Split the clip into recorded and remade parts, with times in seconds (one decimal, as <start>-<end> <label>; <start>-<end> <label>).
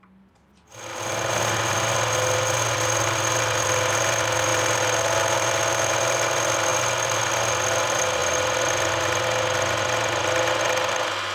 0.0-11.3 recorded